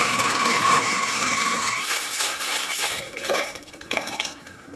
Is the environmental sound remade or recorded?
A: remade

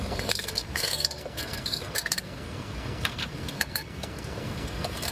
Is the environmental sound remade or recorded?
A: remade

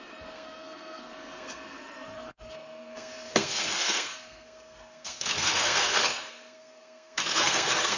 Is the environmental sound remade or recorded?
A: remade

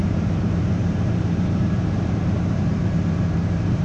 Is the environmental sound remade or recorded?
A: remade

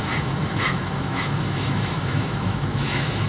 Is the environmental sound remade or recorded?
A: remade